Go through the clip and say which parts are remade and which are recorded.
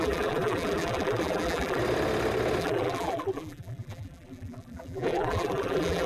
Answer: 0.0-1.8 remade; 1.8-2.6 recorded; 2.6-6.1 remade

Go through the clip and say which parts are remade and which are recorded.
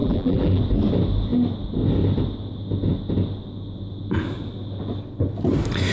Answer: 0.0-0.6 remade; 0.6-5.9 recorded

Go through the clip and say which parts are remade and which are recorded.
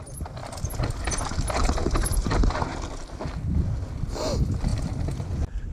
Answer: 0.0-1.6 recorded; 1.6-2.3 remade; 2.3-4.7 recorded; 4.7-5.7 remade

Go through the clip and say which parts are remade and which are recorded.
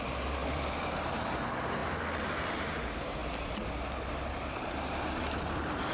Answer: 0.0-1.8 remade; 1.8-2.5 recorded; 2.5-3.2 remade; 3.2-4.3 recorded; 4.3-5.9 remade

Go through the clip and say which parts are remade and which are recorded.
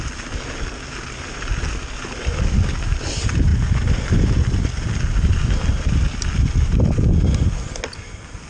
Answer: 0.0-3.5 recorded; 3.5-5.3 remade; 5.3-8.5 recorded